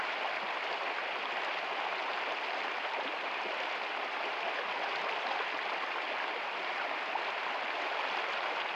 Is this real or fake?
real